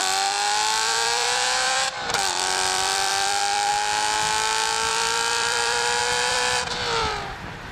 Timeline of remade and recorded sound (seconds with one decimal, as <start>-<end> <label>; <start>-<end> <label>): 0.0-3.7 remade; 3.7-4.9 recorded; 4.9-7.7 remade